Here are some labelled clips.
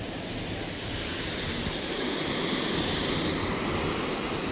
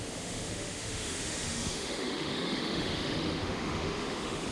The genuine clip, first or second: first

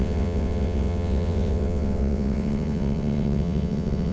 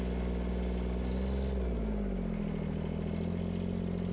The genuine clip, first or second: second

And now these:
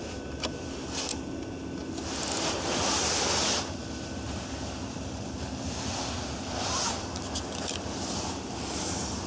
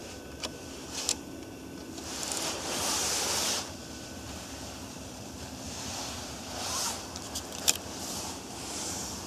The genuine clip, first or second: first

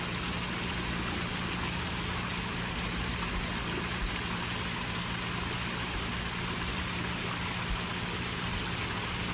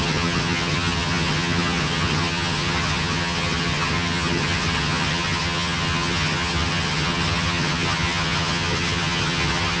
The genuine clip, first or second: first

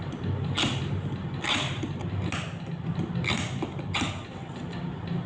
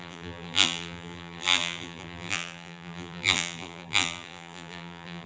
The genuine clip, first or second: first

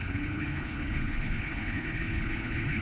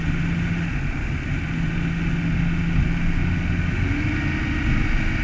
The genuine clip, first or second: second